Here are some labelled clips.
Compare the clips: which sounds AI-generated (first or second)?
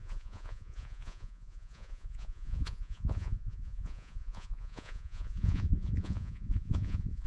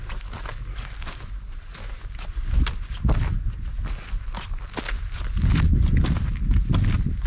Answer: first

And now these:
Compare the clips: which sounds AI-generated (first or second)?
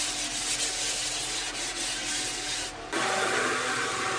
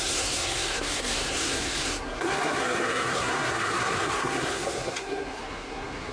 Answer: second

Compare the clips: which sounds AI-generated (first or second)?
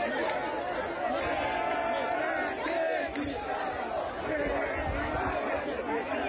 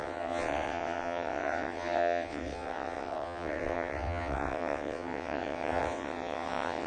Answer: second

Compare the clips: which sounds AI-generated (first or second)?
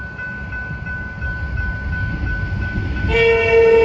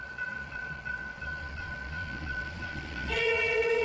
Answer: second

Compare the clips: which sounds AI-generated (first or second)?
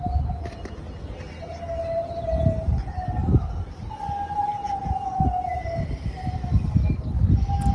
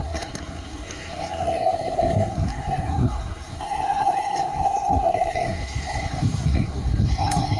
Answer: second